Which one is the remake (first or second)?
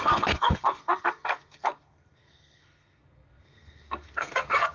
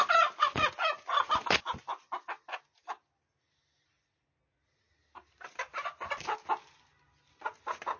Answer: first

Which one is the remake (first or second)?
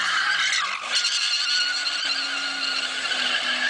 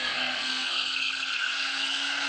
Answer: second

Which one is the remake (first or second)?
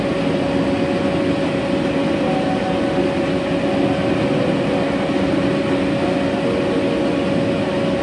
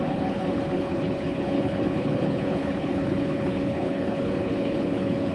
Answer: second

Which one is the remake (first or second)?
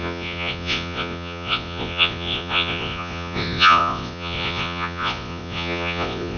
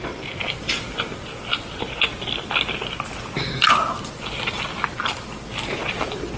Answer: first